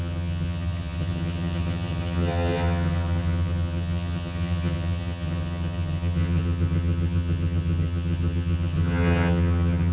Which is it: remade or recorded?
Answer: remade